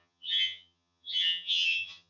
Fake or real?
fake